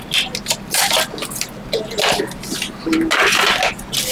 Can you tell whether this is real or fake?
real